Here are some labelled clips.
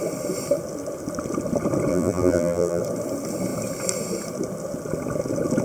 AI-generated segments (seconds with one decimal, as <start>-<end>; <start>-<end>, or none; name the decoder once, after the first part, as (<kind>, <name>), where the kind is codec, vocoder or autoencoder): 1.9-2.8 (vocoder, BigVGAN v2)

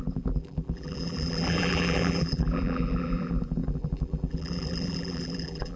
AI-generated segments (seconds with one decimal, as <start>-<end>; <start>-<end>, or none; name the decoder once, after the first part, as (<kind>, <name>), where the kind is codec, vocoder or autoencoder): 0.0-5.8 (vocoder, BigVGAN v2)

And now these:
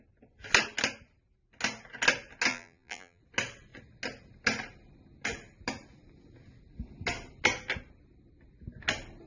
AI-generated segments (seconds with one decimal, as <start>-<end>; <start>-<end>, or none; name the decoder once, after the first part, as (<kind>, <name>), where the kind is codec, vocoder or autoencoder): 2.5-3.2 (vocoder, BigVGAN v2)

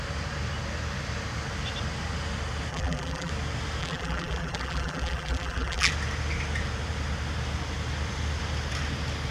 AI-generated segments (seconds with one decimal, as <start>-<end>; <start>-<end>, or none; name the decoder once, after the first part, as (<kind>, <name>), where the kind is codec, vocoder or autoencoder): 2.7-3.3 (vocoder, BigVGAN v2); 3.8-5.9

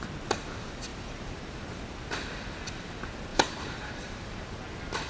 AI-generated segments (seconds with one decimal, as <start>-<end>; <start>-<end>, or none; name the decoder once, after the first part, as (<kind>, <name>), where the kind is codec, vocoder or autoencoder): 0.9-1.8 (vocoder, BigVGAN v2); 3.3-4.6

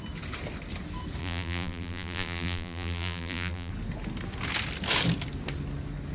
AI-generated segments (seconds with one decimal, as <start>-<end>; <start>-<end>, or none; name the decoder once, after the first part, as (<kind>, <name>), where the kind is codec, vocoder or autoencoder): 1.2-3.7 (vocoder, BigVGAN v2)

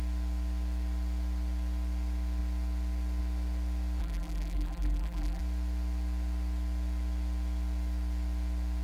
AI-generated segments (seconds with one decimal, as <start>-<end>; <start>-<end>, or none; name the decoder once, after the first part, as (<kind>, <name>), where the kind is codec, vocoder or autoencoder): 4.0-5.4 (vocoder, BigVGAN v2)

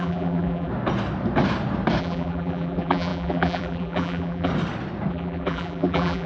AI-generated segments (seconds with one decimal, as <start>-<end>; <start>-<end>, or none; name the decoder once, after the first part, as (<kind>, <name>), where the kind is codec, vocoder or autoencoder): 0.0-0.7 (vocoder, BigVGAN v2); 2.0-4.5; 5.1-6.3